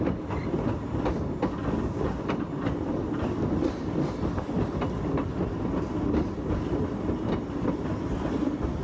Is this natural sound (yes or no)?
yes